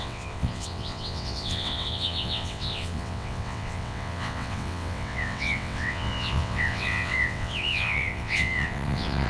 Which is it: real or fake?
fake